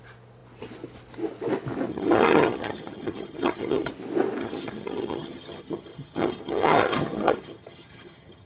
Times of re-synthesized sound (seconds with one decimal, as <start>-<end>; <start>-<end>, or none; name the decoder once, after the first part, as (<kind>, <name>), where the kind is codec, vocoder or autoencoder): 1.9-3.9 (vocoder, HiFi-GAN); 4.4-8.5